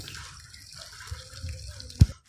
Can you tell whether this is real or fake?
real